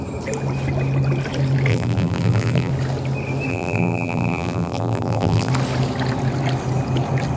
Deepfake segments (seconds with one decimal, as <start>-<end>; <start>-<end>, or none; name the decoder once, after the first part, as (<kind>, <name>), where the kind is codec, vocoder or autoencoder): 1.7-2.7 (vocoder, BigVGAN v2); 3.5-5.5

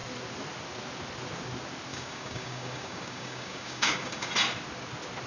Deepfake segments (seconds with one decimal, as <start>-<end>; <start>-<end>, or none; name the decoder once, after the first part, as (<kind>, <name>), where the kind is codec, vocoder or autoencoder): 1.9-4.3 (codec, DAC)

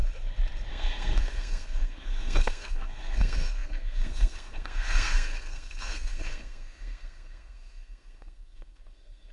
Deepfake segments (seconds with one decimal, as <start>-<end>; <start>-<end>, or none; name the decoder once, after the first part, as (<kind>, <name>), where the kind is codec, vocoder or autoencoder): 0.7-9.3 (codec, SNAC)

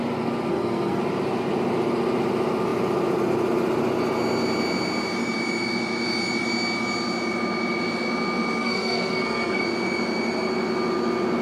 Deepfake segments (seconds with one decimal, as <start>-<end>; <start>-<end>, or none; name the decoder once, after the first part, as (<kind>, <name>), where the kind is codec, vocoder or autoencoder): 0.5-1.0 (codec, SNAC); 8.6-9.6

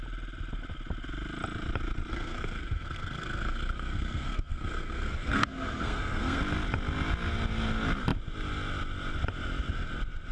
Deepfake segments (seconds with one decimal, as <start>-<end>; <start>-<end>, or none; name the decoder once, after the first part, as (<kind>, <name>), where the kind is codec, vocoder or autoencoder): 2.1-6.4 (codec, SNAC)